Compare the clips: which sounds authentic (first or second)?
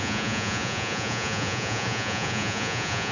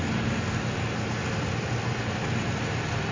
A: second